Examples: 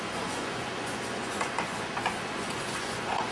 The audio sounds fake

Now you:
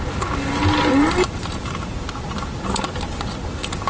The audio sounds real